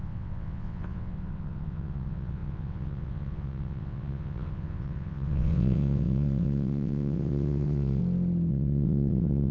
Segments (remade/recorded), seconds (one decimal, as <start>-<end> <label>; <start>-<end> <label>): 0.0-8.0 remade; 8.0-8.5 recorded; 8.5-9.5 remade